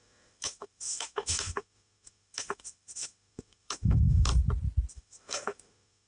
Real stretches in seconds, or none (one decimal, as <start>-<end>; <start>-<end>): 4.3-4.9